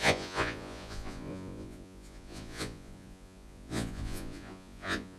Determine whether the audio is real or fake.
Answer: fake